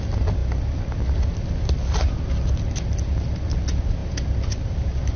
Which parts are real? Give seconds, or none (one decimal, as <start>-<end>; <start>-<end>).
0.0-5.2